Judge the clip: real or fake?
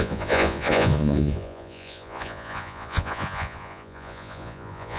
fake